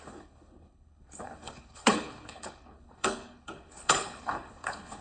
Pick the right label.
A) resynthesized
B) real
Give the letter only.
A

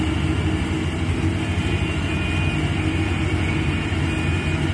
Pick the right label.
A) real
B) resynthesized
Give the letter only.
A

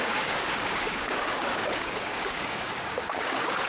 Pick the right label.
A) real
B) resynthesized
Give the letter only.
B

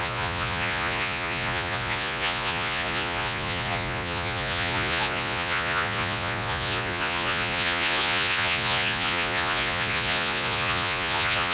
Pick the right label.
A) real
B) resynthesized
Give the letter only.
B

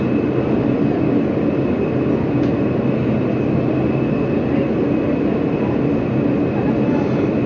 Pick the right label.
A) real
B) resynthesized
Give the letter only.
A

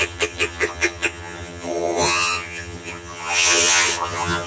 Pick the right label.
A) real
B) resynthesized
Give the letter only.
B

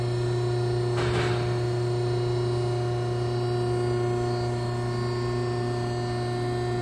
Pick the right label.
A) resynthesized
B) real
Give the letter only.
B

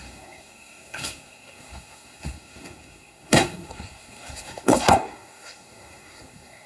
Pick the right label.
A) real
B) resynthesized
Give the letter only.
B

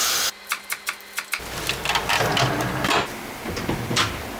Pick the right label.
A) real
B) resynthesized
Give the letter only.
A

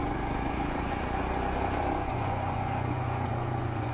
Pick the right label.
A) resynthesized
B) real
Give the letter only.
A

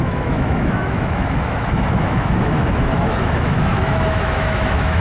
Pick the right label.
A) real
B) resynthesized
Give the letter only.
B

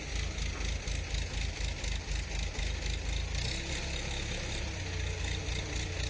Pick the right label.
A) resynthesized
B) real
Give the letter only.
B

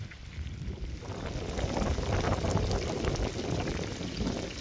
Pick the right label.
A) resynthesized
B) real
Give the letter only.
B